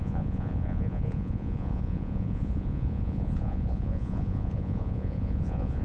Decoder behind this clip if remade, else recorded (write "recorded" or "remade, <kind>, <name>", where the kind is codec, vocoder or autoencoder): remade, vocoder, Vocos